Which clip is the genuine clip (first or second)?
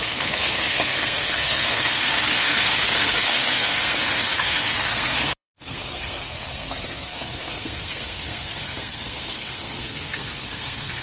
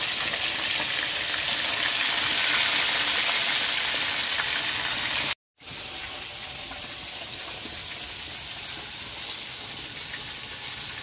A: second